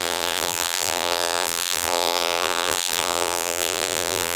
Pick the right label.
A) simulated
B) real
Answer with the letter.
A